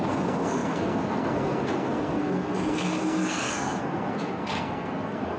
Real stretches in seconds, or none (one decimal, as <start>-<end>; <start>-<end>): none